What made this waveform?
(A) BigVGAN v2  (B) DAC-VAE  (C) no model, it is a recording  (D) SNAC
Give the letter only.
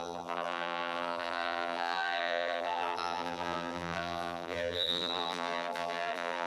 A